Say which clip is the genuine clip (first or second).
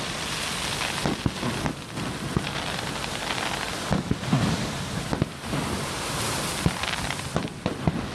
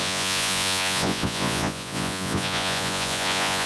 first